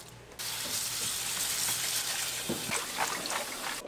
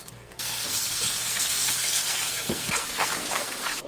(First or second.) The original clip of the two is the first